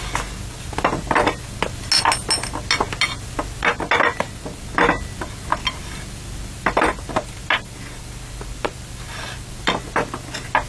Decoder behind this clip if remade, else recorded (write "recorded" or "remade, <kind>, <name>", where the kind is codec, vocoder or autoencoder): recorded